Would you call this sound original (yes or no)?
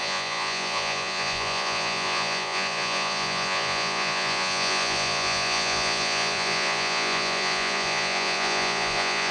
no